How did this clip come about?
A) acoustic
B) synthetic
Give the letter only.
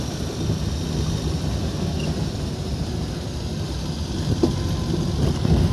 A